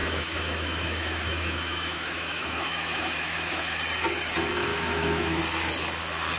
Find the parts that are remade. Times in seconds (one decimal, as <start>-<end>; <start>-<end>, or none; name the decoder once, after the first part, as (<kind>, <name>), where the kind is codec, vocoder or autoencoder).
0.0-3.8 (autoencoder, DAC-VAE); 4.7-5.4